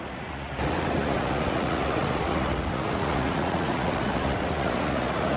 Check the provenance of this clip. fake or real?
fake